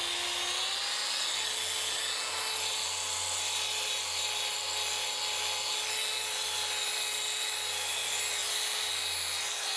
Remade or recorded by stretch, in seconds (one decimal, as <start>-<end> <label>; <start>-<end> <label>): 0.0-9.8 recorded